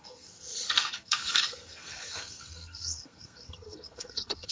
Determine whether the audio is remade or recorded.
remade